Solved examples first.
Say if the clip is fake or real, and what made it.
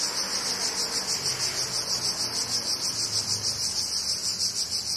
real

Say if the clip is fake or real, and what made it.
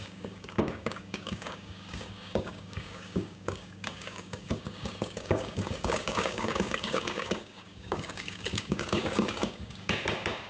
fake, codec, DAC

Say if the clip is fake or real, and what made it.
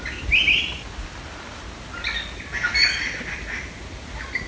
real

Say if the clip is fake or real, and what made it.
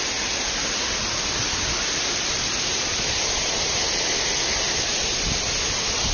real